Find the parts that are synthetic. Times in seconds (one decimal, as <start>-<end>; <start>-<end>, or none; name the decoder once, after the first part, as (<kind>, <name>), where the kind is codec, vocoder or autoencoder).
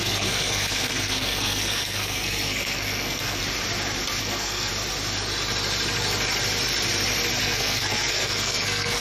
0.0-3.4 (codec, SNAC); 4.2-4.7; 7.4-9.0